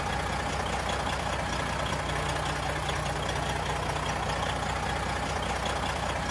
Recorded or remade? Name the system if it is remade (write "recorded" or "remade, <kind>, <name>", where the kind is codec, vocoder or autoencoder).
recorded